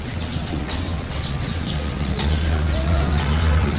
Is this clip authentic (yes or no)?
no